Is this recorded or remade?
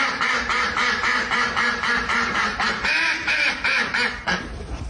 remade